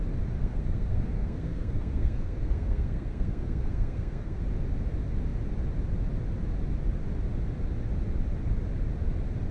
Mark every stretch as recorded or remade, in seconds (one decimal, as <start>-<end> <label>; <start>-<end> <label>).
0.0-0.4 recorded; 0.4-4.4 remade; 4.4-9.5 recorded